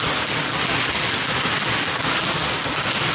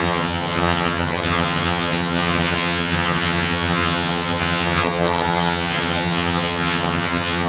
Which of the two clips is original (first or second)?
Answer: first